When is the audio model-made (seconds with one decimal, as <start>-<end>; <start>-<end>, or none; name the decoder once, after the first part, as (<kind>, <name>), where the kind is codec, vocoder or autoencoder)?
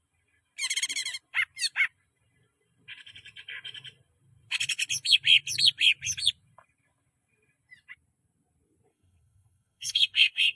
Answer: 8.9-10.6 (codec, SNAC)